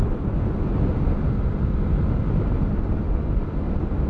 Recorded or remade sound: recorded